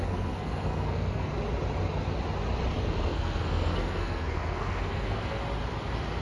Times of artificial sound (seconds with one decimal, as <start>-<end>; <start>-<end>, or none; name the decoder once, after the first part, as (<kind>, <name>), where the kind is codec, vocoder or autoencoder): 0.0-1.3 (codec, SNAC); 2.8-5.4